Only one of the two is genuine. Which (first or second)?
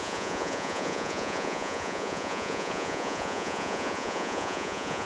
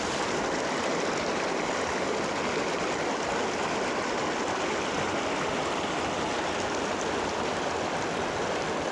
second